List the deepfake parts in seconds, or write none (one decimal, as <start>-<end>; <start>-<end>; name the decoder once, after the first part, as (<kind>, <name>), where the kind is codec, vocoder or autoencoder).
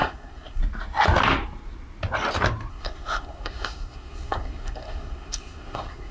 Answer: 0.0-0.6 (codec, SNAC); 2.7-6.1